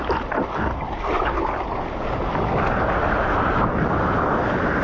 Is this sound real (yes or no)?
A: yes